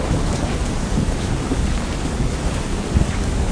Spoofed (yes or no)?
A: yes